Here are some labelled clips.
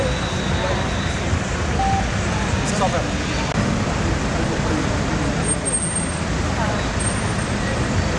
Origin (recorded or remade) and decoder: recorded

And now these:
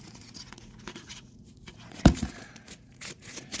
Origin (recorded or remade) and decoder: remade, vocoder, Vocos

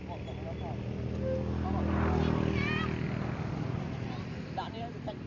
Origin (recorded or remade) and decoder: recorded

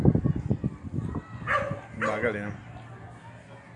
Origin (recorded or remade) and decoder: recorded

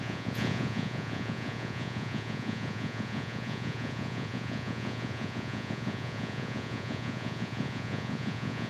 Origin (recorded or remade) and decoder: remade, vocoder, Vocos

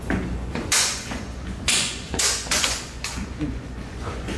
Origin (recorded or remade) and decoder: remade, vocoder, Vocos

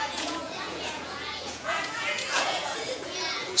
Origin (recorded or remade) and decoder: remade, vocoder, Vocos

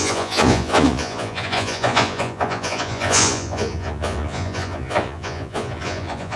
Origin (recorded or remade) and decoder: remade, vocoder, Vocos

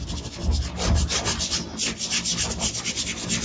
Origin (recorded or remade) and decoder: recorded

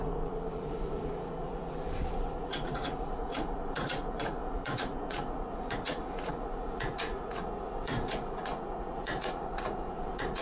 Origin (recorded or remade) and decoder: remade, vocoder, Vocos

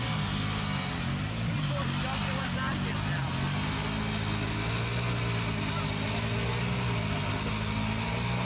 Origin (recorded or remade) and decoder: recorded